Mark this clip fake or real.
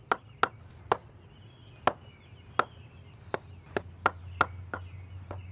real